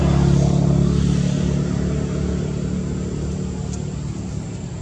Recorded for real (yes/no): yes